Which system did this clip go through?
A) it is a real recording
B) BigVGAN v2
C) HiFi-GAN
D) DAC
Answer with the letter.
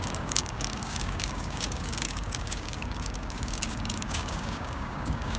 D